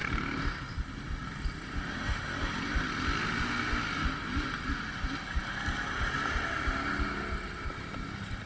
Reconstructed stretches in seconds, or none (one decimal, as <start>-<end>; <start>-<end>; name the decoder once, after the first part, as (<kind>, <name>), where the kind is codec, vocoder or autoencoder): none